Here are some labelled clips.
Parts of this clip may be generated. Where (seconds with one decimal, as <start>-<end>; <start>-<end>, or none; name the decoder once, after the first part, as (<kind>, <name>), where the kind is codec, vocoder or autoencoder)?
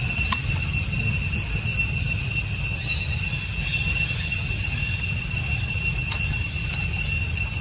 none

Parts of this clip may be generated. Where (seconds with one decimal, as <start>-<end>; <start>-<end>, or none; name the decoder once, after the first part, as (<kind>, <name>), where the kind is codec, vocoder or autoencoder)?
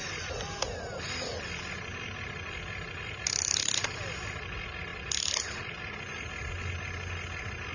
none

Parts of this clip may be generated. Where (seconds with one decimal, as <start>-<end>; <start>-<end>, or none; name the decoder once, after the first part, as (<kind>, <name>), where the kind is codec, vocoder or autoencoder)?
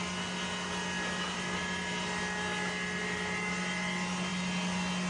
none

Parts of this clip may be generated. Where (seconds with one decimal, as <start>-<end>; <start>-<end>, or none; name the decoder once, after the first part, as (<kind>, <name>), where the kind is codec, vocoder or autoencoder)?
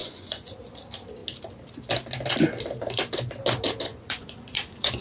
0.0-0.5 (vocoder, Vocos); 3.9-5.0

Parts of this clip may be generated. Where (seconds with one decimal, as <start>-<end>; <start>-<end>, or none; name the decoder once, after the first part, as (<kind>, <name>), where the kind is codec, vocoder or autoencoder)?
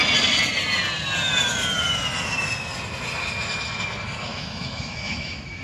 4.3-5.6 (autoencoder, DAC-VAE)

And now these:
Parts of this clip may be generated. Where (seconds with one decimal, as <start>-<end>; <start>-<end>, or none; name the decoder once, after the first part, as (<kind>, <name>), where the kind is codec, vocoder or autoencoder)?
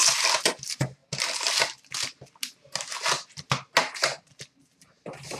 none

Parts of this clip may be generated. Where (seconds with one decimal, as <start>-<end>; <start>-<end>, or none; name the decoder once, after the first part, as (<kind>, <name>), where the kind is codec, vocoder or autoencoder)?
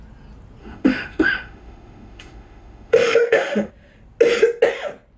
0.6-3.7 (autoencoder, DAC-VAE)